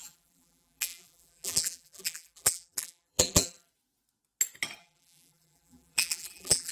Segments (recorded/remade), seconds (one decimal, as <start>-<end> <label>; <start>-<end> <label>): 0.0-3.7 remade; 3.7-4.8 recorded; 4.8-6.7 remade